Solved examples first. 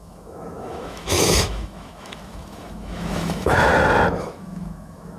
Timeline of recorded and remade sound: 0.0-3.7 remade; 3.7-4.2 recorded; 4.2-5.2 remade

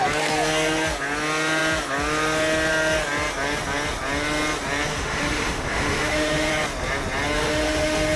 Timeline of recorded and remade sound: 0.0-4.9 recorded; 4.9-6.5 remade; 6.5-7.4 recorded; 7.4-8.2 remade

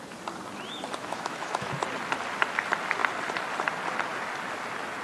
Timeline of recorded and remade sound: 0.0-1.0 recorded; 1.0-1.7 remade; 1.7-5.0 recorded

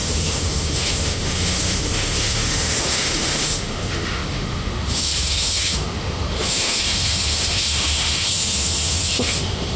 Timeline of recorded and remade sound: 0.0-9.8 remade

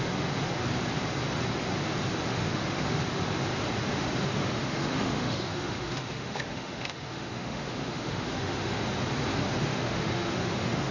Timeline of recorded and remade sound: 0.0-2.3 recorded; 2.3-3.0 remade; 3.0-3.9 recorded; 3.9-8.8 remade; 8.8-9.6 recorded; 9.6-10.9 remade

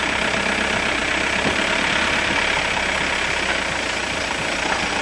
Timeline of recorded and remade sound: 0.0-5.0 recorded